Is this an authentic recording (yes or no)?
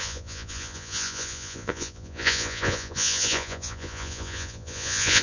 no